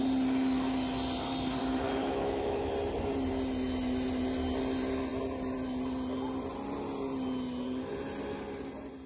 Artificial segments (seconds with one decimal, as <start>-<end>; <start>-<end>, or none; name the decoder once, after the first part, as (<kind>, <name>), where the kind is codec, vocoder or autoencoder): 2.0-2.7 (autoencoder, DAC-VAE)